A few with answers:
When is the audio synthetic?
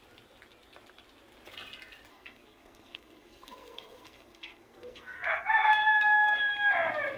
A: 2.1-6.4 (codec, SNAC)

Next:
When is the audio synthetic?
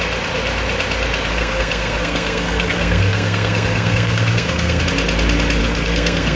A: 1.3-4.8 (codec, SNAC); 5.6-6.4